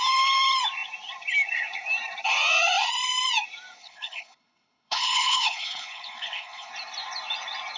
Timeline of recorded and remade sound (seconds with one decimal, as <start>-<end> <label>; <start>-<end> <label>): 0.0-3.8 recorded; 3.8-6.7 remade; 6.7-7.8 recorded